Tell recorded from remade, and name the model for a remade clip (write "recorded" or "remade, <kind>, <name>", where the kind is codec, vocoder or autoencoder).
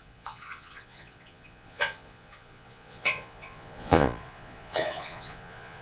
remade, vocoder, Vocos